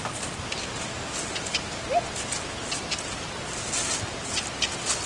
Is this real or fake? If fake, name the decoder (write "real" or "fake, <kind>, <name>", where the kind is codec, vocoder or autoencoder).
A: real